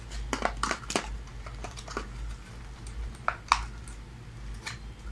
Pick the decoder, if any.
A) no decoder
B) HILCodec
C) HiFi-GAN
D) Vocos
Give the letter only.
A